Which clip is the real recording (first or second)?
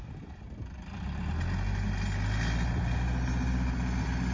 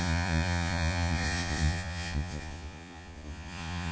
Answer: first